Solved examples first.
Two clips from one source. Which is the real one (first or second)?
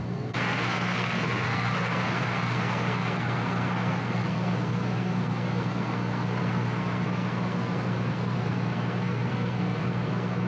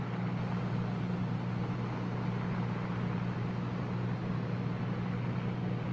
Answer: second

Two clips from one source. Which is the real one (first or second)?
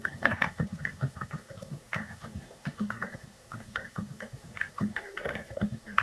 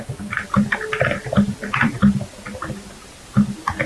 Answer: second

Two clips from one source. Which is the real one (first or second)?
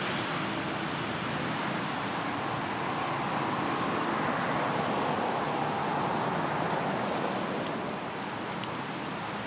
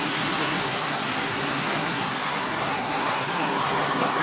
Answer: first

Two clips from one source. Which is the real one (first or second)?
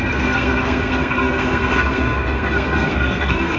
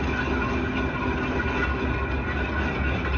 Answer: second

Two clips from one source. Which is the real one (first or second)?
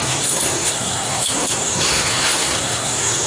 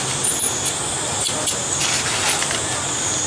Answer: second